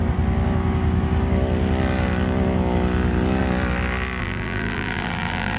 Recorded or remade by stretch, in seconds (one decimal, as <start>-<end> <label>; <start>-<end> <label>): 0.0-4.2 recorded; 4.2-5.6 remade